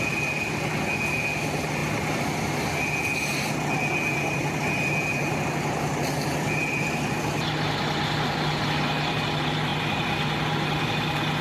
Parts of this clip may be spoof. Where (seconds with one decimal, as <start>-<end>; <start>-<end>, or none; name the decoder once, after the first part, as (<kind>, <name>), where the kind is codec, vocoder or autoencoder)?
none